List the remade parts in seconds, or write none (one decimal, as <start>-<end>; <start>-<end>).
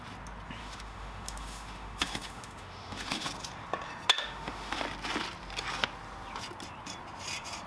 0.6-3.3; 4.1-4.8